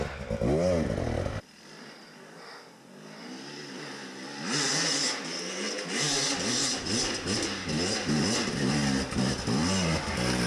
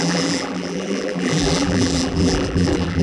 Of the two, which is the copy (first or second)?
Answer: second